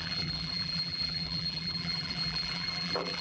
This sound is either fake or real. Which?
fake